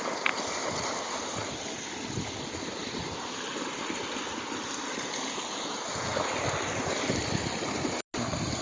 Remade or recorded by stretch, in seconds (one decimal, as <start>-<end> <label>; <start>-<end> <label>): 0.0-0.6 recorded; 0.6-1.6 remade; 1.6-2.8 recorded; 2.8-4.0 remade; 4.0-8.6 recorded